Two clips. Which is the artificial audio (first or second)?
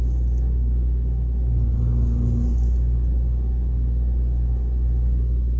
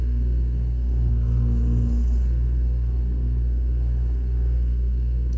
second